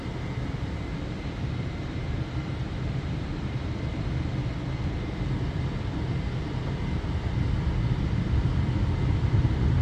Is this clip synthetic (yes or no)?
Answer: yes